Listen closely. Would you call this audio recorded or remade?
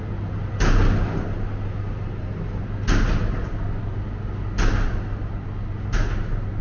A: recorded